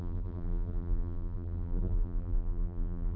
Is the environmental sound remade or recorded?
remade